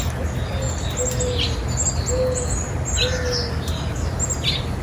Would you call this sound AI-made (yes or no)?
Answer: no